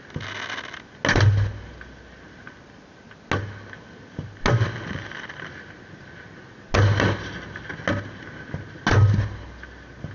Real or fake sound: real